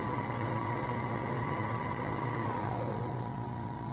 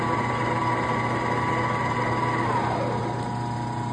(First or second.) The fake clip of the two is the first